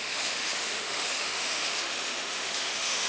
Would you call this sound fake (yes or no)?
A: yes